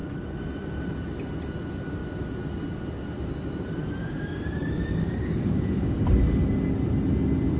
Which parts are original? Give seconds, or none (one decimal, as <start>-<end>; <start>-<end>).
0.0-4.0; 6.1-7.6